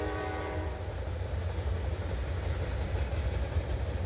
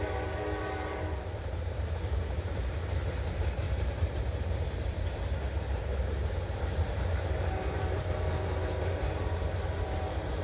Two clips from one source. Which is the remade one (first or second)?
second